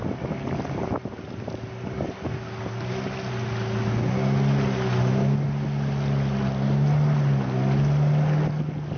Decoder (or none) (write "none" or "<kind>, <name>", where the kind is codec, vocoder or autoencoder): none